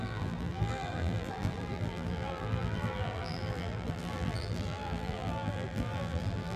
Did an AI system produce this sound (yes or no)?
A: yes